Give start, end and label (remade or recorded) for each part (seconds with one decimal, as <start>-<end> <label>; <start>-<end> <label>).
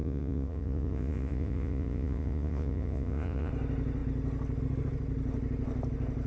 0.0-3.5 remade; 3.5-6.3 recorded